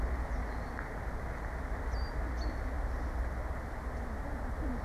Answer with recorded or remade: recorded